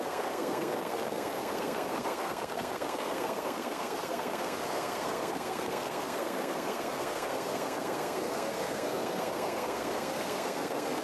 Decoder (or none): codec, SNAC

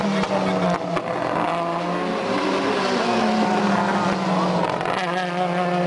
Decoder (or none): none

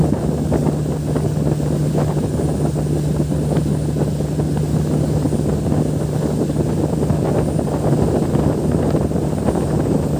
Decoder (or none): none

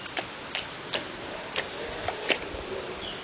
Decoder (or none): none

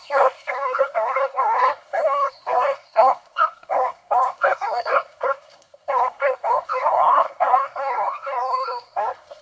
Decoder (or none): codec, SNAC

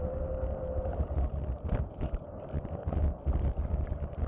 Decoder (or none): none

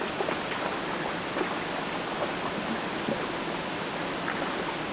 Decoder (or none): none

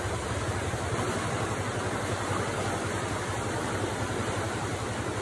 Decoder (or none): none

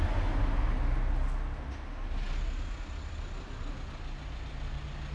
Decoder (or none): none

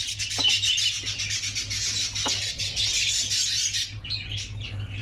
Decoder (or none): none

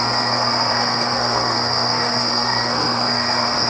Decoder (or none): codec, SNAC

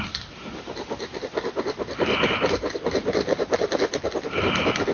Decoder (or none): none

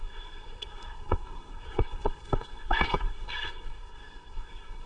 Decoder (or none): codec, SNAC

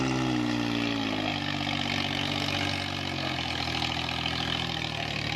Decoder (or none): none